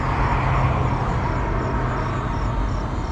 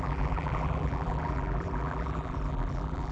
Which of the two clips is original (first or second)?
first